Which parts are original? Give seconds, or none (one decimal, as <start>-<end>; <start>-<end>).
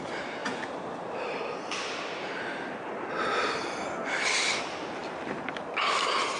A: 0.0-0.4; 3.1-6.4